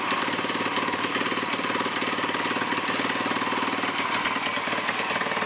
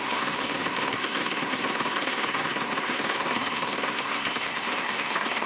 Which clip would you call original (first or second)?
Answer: first